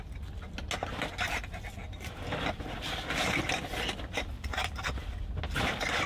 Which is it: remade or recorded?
recorded